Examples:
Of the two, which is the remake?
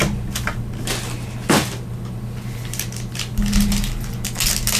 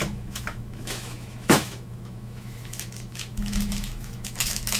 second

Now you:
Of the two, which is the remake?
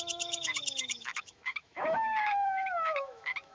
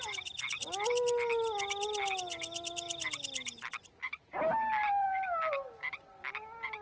first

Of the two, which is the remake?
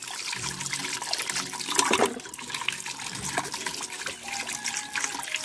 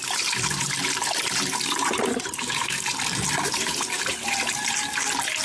second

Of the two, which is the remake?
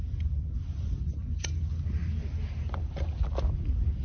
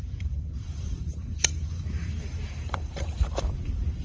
second